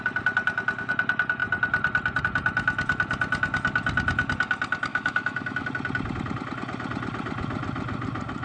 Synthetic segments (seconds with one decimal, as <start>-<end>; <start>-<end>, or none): 4.9-5.7